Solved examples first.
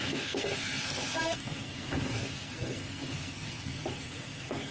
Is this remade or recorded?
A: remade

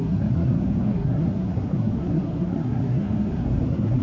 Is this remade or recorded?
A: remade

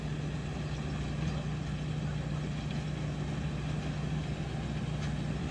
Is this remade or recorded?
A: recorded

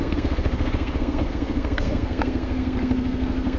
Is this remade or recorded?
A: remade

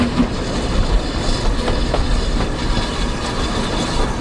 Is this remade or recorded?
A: recorded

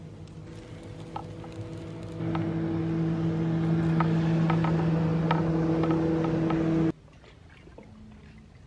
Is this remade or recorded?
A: recorded